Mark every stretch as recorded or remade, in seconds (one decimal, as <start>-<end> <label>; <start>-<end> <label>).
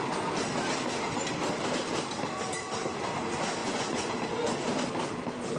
0.0-3.6 recorded; 3.6-4.1 remade; 4.1-5.6 recorded